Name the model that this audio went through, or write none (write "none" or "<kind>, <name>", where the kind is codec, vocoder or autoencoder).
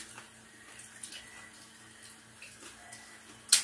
none